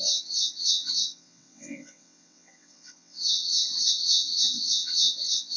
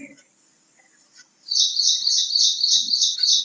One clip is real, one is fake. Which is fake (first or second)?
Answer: first